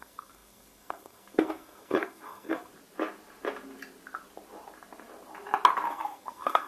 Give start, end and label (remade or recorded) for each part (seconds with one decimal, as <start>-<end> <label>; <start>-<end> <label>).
0.0-2.7 remade; 2.7-5.9 recorded; 5.9-6.7 remade